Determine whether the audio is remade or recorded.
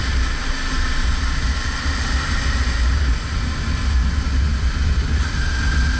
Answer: recorded